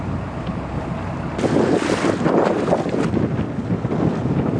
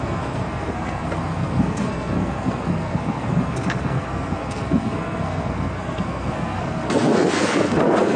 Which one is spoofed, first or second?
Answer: second